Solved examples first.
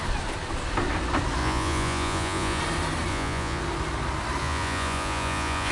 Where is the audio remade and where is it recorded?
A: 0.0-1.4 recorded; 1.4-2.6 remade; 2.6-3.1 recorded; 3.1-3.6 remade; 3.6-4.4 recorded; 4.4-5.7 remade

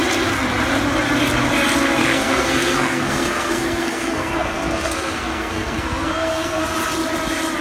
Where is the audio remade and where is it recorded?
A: 0.0-2.0 recorded; 2.0-6.6 remade; 6.6-7.6 recorded

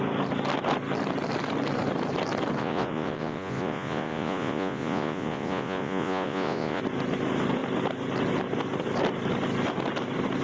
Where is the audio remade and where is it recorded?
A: 0.0-2.6 recorded; 2.6-6.8 remade; 6.8-10.4 recorded

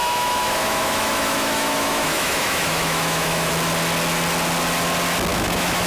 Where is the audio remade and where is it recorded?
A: 0.0-3.5 remade; 3.5-5.3 recorded; 5.3-5.9 remade

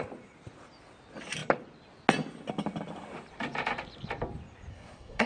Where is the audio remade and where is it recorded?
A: 0.0-4.7 recorded; 4.7-5.3 remade